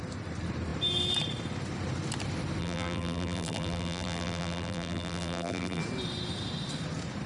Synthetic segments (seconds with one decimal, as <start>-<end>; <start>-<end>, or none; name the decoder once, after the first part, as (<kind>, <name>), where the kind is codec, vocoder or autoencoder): 2.6-5.8 (vocoder, BigVGAN v2)